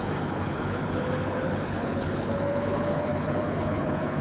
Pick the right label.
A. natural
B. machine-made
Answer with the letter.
B